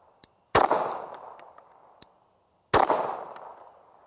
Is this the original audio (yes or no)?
yes